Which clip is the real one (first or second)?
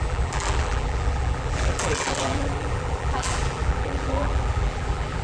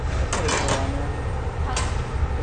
second